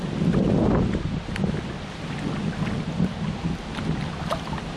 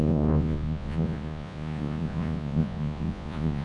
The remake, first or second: second